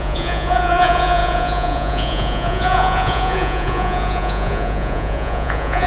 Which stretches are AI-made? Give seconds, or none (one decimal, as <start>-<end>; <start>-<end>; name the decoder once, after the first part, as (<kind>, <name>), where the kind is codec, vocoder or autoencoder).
0.0-5.9 (vocoder, Vocos)